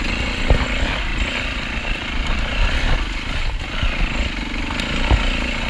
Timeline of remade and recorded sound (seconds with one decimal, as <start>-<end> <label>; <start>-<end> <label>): 0.0-1.1 recorded; 1.1-3.4 remade; 3.4-5.7 recorded

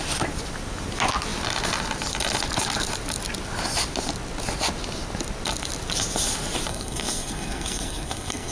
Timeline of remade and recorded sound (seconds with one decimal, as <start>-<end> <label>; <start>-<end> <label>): 0.0-6.7 recorded; 6.7-8.5 remade

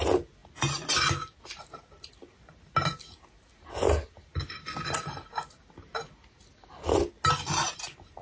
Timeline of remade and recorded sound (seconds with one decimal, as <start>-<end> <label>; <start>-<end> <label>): 0.0-8.2 recorded

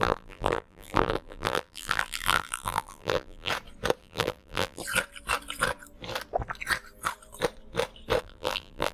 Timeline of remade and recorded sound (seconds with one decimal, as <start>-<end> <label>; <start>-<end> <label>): 0.0-3.5 remade; 3.5-4.0 recorded; 4.0-4.8 remade; 4.8-8.2 recorded; 8.2-8.9 remade

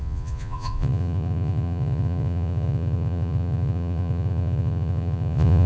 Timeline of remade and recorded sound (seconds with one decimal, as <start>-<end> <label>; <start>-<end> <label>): 0.0-5.7 remade